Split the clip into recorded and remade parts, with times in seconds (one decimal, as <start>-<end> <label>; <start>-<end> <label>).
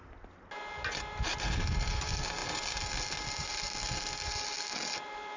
0.0-5.4 recorded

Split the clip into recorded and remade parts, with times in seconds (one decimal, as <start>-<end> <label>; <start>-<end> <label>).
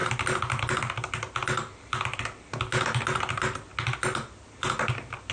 0.0-5.3 recorded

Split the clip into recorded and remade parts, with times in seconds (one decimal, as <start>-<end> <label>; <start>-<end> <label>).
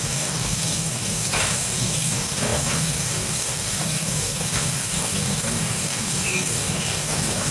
0.0-7.5 remade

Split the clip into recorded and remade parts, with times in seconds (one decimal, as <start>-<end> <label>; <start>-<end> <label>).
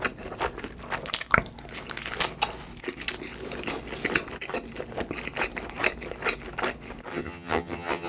0.0-7.1 recorded; 7.1-8.1 remade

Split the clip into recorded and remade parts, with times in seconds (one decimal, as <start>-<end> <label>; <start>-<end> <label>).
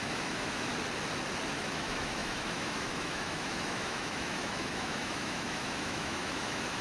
0.0-0.7 remade; 0.7-1.5 recorded; 1.5-6.8 remade